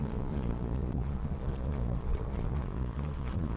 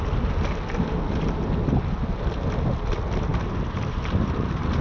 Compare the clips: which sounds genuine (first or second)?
second